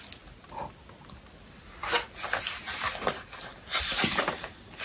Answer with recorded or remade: recorded